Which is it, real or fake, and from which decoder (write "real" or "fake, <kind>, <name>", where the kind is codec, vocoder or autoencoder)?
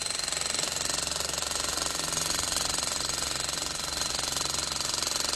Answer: real